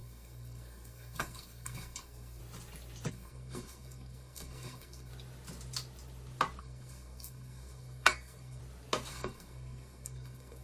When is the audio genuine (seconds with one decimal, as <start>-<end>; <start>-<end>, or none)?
2.4-3.1; 5.1-6.6; 8.6-9.1

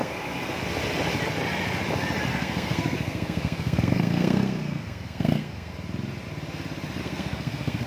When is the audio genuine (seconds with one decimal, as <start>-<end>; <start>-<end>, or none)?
0.6-2.3; 5.7-7.0

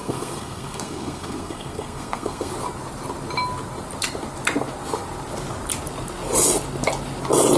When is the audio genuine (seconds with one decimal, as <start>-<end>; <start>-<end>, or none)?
2.5-7.6

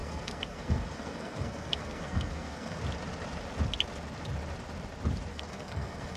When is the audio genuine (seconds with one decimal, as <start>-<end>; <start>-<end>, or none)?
2.8-5.3

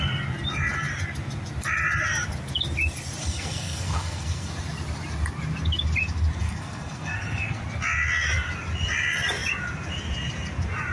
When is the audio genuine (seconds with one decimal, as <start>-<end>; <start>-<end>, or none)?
0.0-3.2; 4.5-6.4; 7.6-10.9

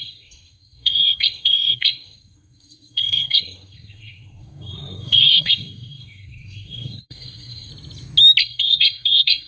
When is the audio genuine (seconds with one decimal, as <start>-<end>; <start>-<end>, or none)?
7.7-8.4